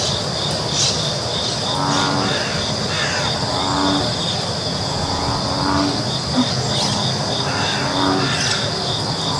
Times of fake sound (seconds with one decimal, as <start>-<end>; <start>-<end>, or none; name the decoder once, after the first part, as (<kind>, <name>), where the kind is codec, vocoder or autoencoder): 4.7-5.5 (vocoder, Vocos)